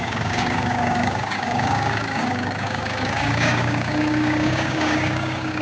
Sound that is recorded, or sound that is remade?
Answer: remade